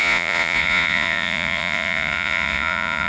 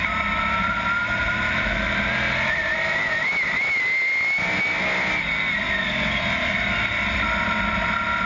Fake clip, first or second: first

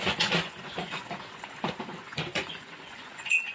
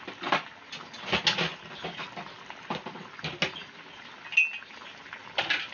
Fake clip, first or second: first